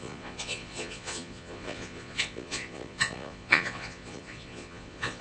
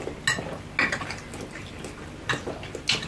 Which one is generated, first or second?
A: first